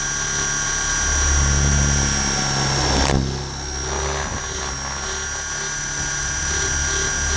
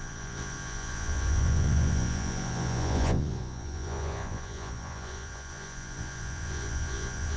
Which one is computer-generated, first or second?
second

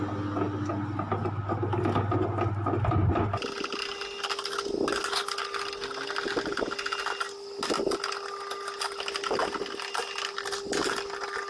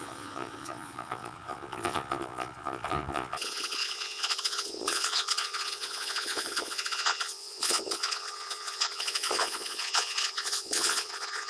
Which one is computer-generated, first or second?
second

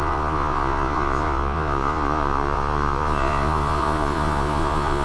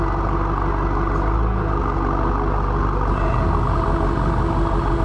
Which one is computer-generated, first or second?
first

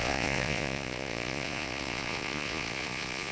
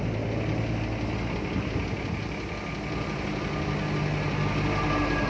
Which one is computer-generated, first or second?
first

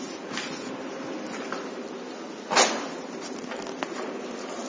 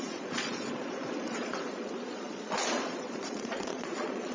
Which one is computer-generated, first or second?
second